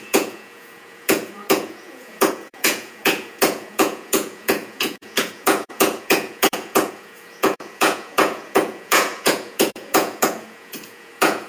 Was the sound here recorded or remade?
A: remade